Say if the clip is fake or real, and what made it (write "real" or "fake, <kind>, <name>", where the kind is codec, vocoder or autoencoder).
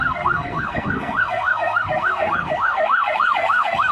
fake, codec, SNAC